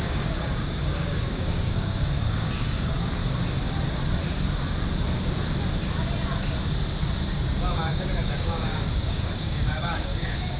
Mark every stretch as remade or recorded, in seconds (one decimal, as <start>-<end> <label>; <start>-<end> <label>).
0.0-3.2 remade; 3.2-7.3 recorded; 7.3-10.6 remade